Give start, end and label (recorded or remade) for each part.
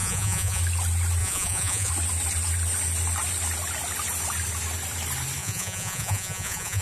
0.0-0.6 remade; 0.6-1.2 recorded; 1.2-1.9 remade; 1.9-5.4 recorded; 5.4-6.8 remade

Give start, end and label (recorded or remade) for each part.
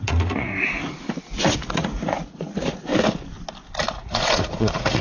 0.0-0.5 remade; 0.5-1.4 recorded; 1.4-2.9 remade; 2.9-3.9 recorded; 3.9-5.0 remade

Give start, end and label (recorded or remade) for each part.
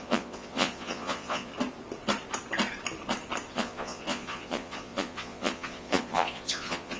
0.0-1.5 remade; 1.5-3.5 recorded; 3.5-7.0 remade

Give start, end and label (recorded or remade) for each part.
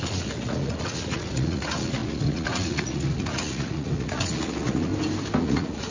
0.0-4.9 remade; 4.9-5.4 recorded; 5.4-5.9 remade